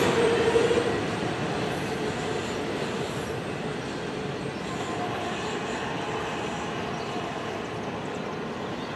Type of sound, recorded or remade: recorded